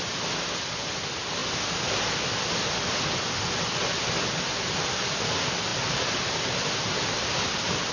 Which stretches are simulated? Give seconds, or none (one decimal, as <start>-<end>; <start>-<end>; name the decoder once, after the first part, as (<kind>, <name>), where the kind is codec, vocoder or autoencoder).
0.0-1.4 (vocoder, BigVGAN v2); 4.9-5.7; 7.3-7.9